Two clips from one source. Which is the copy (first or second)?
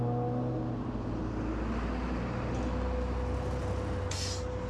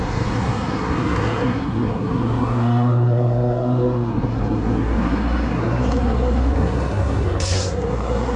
second